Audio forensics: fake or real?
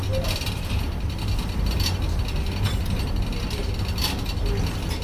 real